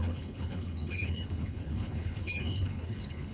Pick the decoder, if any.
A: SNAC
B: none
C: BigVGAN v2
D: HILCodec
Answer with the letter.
D